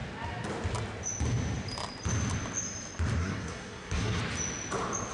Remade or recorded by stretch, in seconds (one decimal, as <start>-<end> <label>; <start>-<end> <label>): 0.0-3.2 recorded; 3.2-4.2 remade; 4.2-5.1 recorded